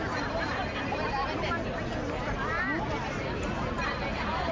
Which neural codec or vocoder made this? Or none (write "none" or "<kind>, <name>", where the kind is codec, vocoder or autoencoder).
none